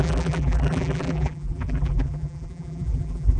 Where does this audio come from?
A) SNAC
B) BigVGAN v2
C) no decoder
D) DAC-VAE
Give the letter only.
B